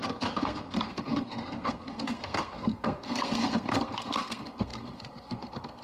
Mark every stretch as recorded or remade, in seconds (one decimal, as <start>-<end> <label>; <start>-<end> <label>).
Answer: 0.0-5.8 remade

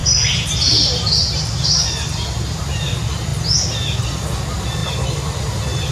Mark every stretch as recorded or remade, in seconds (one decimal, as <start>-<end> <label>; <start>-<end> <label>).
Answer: 0.0-5.9 recorded

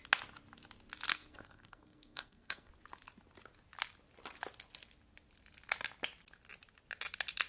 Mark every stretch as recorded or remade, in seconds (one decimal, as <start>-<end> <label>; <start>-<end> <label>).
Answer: 0.0-1.1 recorded; 1.1-2.7 remade; 2.7-7.5 recorded

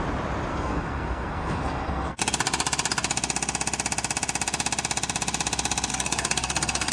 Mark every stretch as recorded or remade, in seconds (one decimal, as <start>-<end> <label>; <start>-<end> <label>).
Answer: 0.0-0.5 recorded; 0.5-2.2 remade; 2.2-5.9 recorded; 5.9-6.9 remade

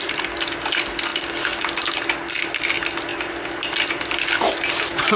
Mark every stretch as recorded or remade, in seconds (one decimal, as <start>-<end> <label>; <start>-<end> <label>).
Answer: 0.0-5.2 recorded

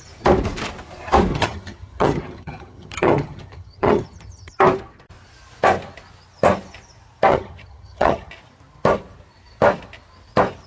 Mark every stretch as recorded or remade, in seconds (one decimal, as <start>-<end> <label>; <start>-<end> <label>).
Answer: 0.0-1.3 recorded; 1.3-4.5 remade; 4.5-7.3 recorded; 7.3-8.3 remade; 8.3-10.7 recorded

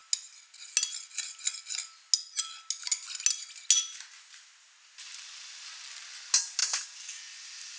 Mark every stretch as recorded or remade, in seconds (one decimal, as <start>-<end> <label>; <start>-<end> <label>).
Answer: 0.0-6.6 recorded; 6.6-7.8 remade

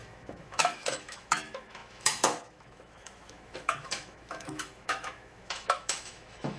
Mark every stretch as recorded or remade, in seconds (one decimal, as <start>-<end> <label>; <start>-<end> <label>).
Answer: 0.0-6.6 remade